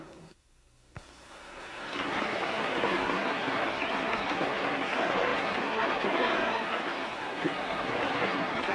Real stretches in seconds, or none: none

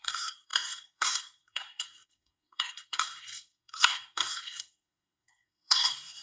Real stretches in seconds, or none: none

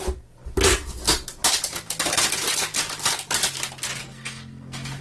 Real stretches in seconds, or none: 0.0-4.0

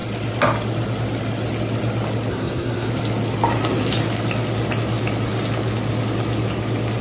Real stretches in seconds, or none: 0.0-2.3; 2.9-7.0

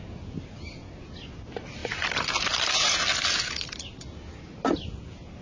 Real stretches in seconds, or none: 0.0-5.4

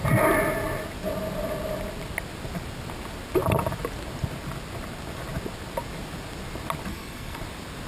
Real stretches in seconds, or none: 0.0-6.9; 7.4-7.9

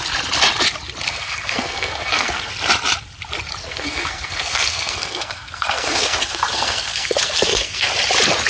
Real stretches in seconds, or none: 0.0-1.1; 2.5-3.6; 7.9-8.5

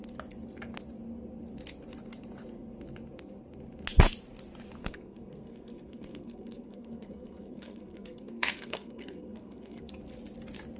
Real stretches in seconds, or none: 0.0-4.8; 9.9-10.8